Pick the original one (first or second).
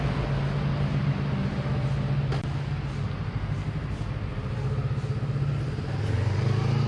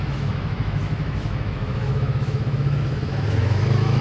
first